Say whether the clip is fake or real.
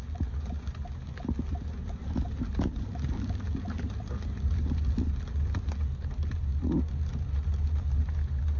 real